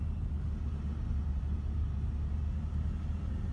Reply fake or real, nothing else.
real